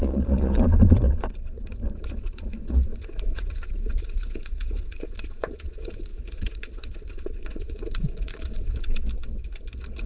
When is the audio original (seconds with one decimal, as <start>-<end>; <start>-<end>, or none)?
8.7-10.1